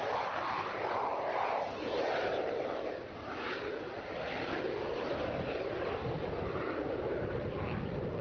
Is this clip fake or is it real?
fake